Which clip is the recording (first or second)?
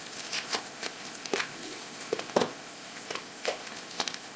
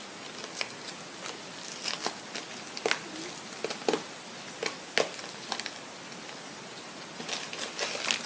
second